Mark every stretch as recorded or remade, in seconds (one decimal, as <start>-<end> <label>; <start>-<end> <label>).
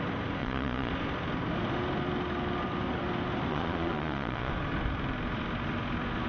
0.0-0.4 recorded; 0.4-0.9 remade; 0.9-3.5 recorded; 3.5-4.5 remade; 4.5-6.3 recorded